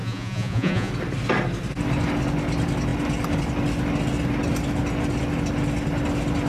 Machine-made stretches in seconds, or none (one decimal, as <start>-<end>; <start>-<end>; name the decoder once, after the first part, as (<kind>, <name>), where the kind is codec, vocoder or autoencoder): 0.0-0.9 (vocoder, Vocos)